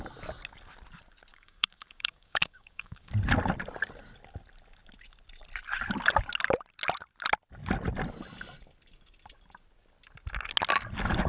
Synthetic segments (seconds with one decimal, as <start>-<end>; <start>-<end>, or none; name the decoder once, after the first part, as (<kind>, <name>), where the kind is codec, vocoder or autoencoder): 1.3-3.1 (codec, DAC)